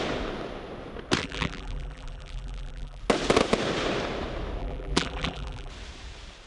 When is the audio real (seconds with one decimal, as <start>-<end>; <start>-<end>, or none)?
0.0-1.2; 3.0-4.6; 5.7-6.5